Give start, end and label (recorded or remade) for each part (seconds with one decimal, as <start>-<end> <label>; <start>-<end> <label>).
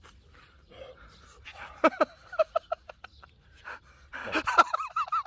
0.0-5.3 recorded